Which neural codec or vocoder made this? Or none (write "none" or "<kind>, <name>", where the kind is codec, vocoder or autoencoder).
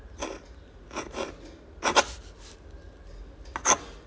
none